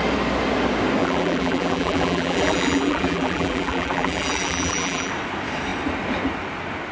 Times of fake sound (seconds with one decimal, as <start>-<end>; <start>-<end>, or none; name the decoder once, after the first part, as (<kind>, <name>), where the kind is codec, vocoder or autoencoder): 1.0-5.1 (vocoder, BigVGAN v2)